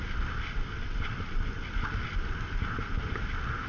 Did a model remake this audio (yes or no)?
no